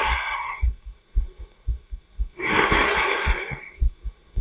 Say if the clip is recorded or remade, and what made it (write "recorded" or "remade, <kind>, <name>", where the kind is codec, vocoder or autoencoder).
remade, codec, SNAC